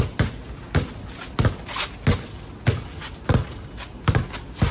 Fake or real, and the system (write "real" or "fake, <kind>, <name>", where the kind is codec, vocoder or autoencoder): real